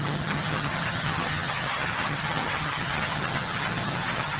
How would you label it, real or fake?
fake